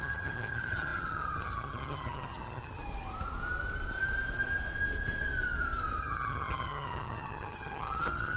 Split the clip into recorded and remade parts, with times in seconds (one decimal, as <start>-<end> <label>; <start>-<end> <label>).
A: 0.0-2.8 remade; 2.8-6.0 recorded; 6.0-8.4 remade